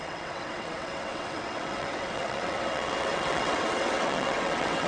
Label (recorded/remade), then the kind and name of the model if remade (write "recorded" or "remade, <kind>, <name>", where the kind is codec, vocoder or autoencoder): remade, vocoder, WaveNeXt